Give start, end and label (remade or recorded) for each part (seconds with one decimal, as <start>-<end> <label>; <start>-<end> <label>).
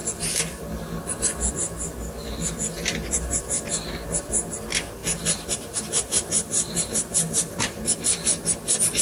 0.0-5.0 recorded; 5.0-7.8 remade; 7.8-9.0 recorded